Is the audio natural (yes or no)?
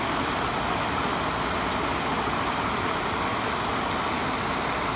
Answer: yes